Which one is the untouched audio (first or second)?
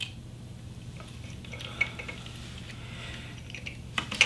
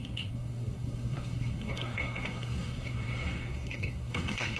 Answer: first